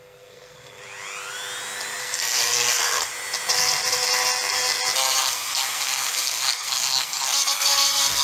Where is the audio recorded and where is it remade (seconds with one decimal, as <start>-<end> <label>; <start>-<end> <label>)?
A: 0.0-0.8 remade; 0.8-2.0 recorded; 2.0-3.1 remade; 3.1-5.2 recorded; 5.2-8.2 remade